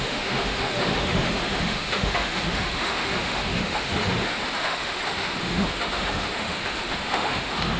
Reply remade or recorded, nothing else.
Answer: remade